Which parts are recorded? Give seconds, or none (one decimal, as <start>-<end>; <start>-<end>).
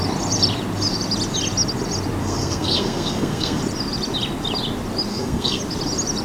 0.0-2.2; 3.6-5.1; 5.6-6.2